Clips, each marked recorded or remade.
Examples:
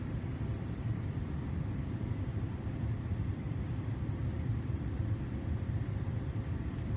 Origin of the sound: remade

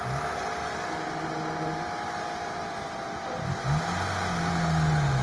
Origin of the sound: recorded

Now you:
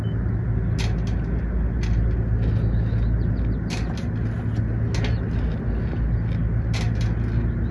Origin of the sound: recorded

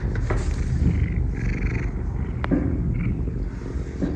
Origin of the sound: recorded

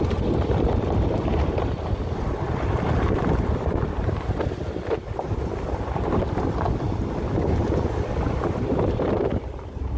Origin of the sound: recorded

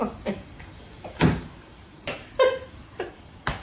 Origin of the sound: remade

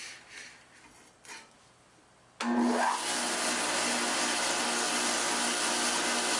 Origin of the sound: recorded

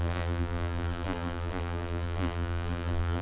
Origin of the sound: remade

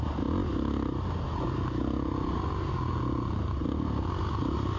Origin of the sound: recorded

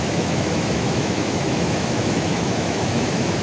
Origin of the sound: remade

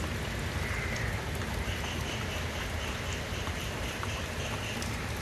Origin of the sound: recorded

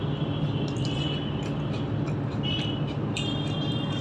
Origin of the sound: recorded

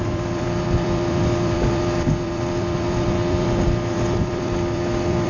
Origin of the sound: remade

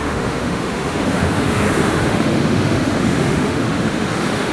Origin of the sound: remade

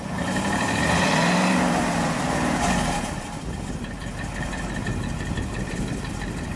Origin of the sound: remade